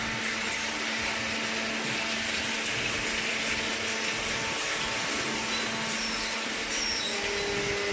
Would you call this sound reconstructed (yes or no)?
no